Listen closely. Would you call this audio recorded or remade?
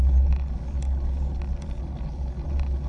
recorded